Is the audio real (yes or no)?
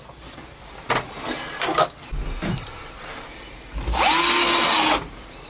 yes